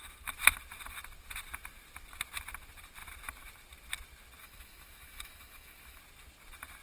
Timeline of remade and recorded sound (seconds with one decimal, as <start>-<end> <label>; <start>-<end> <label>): 0.0-4.4 recorded; 4.4-6.0 remade; 6.0-6.8 recorded